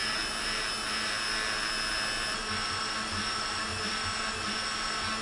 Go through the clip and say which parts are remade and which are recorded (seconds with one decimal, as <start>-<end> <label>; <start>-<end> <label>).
0.0-5.2 recorded